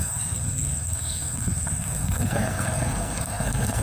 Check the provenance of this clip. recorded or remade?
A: remade